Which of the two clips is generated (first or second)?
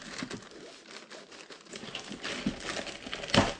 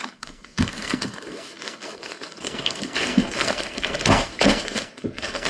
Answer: second